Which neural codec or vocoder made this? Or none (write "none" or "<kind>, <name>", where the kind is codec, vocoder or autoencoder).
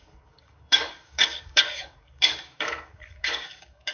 codec, DAC